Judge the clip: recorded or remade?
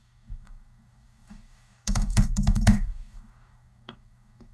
remade